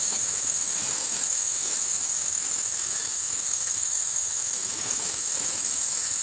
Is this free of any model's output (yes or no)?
no